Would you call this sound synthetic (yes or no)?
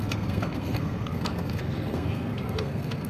yes